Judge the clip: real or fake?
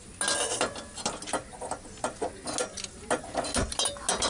real